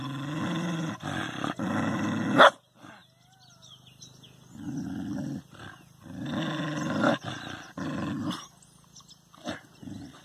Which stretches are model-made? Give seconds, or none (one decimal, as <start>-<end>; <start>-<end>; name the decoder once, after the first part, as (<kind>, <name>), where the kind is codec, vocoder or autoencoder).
none